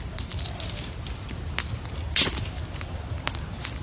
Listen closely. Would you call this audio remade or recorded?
recorded